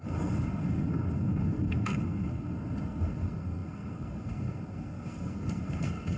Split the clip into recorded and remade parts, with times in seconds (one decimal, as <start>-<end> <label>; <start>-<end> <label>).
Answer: 0.0-6.2 remade